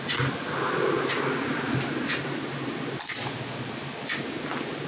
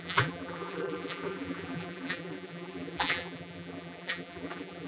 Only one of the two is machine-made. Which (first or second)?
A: second